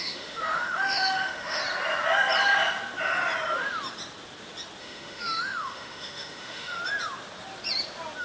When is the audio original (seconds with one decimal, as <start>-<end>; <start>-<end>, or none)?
1.6-4.8; 6.8-8.2